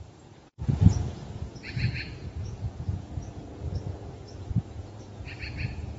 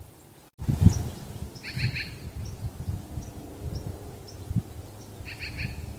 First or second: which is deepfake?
first